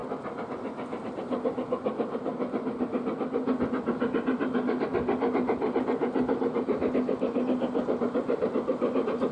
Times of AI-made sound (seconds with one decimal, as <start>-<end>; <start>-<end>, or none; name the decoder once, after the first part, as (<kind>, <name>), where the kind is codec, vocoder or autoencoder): none